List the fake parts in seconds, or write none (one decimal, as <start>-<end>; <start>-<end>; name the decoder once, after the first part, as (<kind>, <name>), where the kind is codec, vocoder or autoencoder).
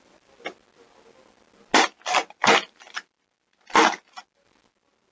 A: none